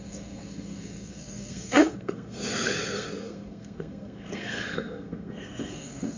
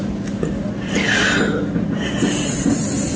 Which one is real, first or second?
second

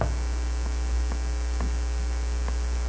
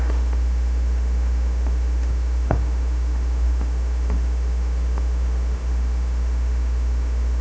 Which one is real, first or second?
first